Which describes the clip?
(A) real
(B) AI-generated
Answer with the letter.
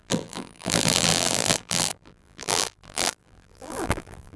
B